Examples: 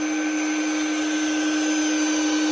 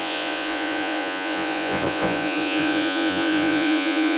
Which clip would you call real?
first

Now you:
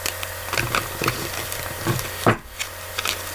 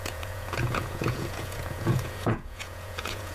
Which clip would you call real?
first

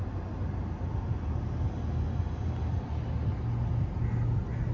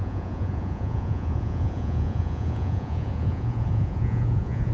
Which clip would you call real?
first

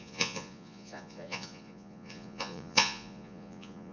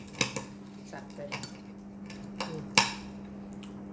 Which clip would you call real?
second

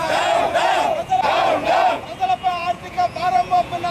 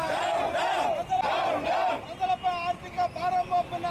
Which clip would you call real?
second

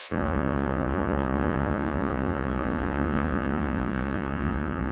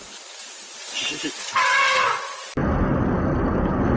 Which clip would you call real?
second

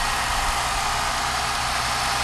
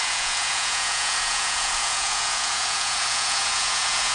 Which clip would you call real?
first